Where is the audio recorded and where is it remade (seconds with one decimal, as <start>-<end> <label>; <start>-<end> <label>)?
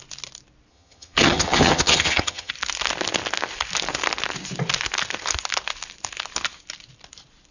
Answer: 0.0-0.7 recorded; 0.7-2.5 remade; 2.5-7.5 recorded